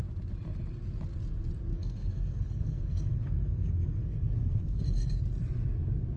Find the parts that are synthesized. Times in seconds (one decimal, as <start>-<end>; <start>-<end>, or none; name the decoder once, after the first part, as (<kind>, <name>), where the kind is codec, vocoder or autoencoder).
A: 1.7-4.8 (codec, SNAC)